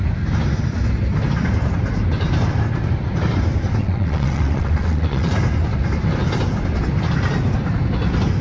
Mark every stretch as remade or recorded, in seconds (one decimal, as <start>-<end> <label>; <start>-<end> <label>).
0.0-3.8 recorded; 3.8-5.3 remade; 5.3-8.4 recorded